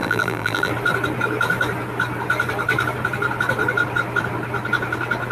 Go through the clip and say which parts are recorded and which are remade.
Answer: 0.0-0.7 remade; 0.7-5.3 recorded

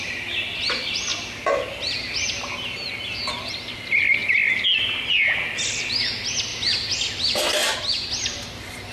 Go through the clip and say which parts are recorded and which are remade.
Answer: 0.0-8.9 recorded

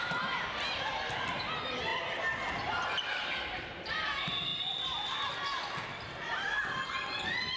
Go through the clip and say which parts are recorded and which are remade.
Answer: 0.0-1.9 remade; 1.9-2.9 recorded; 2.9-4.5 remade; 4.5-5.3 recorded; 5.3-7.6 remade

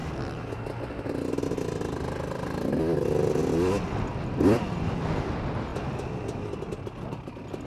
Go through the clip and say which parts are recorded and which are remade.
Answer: 0.0-4.6 recorded; 4.6-5.7 remade; 5.7-7.7 recorded

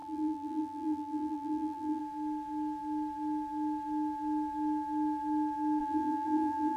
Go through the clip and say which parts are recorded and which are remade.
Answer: 0.0-2.0 remade; 2.0-5.8 recorded; 5.8-6.8 remade